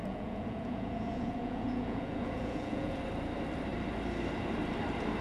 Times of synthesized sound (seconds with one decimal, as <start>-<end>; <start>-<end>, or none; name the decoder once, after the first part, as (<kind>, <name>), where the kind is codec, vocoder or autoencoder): 0.0-3.0 (vocoder, Vocos)